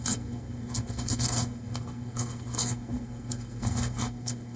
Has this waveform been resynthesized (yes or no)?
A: yes